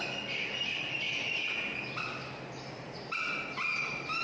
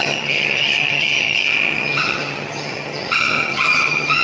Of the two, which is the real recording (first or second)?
first